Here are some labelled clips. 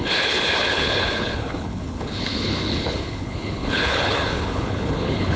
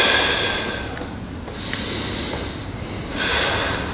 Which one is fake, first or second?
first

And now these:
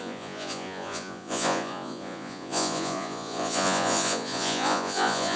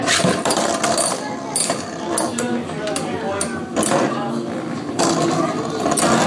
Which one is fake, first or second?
first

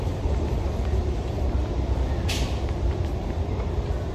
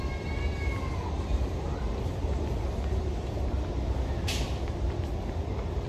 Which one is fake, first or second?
first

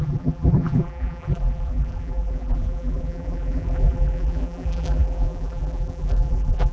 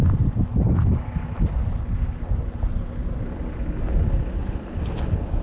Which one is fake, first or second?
first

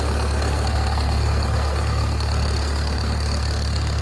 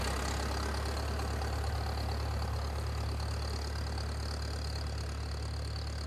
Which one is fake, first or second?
first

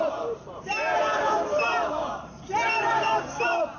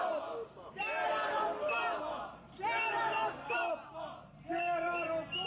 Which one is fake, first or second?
first